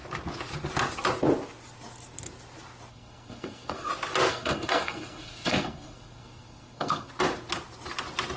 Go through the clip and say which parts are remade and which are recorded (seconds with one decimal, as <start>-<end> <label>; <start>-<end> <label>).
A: 0.0-2.9 recorded; 2.9-3.9 remade; 3.9-4.3 recorded; 4.3-7.1 remade; 7.1-8.4 recorded